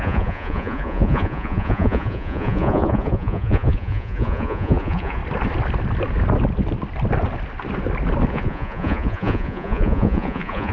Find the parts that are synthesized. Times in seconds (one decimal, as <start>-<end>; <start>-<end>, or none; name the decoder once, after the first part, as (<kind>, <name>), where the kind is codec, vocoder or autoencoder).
0.0-5.2 (vocoder, Vocos); 8.3-10.7